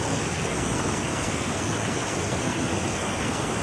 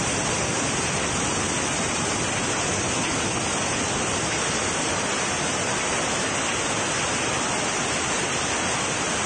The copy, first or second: first